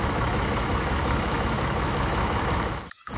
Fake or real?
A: fake